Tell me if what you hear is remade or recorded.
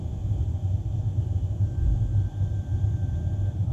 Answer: recorded